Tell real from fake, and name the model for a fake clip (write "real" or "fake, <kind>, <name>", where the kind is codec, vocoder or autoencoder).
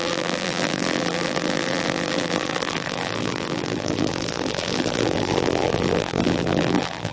fake, vocoder, BigVGAN v2